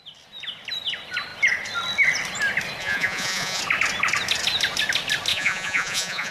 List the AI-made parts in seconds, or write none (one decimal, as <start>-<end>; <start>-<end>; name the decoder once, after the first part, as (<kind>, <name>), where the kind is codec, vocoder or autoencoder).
2.8-3.6 (vocoder, Vocos); 5.3-6.3